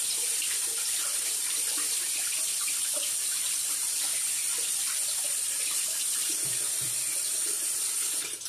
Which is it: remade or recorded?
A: remade